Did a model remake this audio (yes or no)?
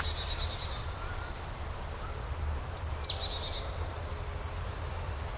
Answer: no